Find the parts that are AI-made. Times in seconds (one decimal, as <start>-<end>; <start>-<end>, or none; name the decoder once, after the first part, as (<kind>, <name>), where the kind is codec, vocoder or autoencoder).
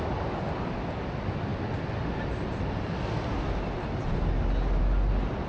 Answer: none